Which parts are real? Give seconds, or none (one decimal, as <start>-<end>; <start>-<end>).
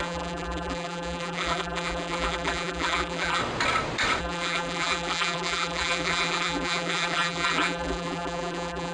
3.4-4.2